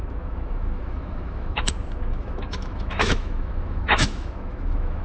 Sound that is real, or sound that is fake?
fake